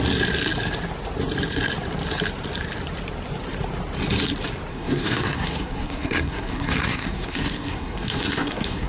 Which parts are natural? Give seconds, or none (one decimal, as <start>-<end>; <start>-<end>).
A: 0.0-4.7